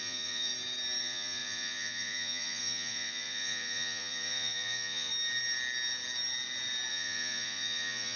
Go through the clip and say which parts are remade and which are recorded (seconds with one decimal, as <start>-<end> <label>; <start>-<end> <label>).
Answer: 0.0-0.5 remade; 0.5-1.0 recorded; 1.0-5.1 remade; 5.1-6.9 recorded; 6.9-8.2 remade